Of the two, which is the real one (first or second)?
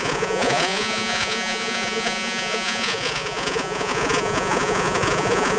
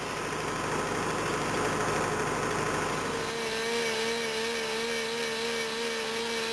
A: second